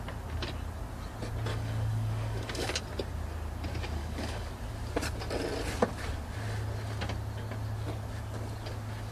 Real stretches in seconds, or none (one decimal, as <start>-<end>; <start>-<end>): 0.0-1.5; 2.8-4.0; 4.5-9.1